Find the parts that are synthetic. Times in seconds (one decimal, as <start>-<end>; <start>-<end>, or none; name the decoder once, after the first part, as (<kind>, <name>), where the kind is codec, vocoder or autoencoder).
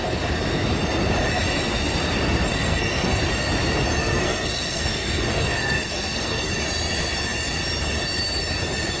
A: 2.5-3.2 (codec, SNAC); 4.0-6.5